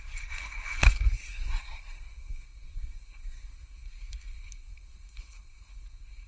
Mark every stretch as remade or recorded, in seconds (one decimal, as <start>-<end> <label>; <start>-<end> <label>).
0.0-6.3 remade